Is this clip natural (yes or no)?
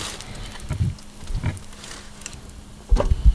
yes